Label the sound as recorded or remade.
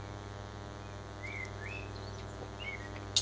recorded